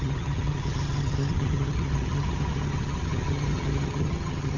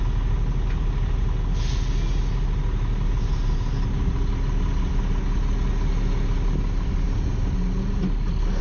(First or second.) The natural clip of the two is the second